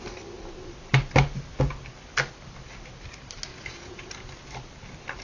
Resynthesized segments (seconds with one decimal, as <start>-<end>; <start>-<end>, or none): 3.5-4.1